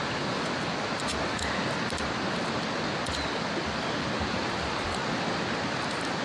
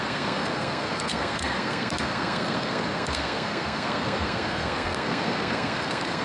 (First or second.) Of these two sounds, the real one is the first